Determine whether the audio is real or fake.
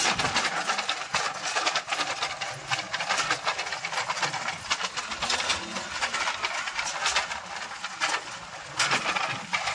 real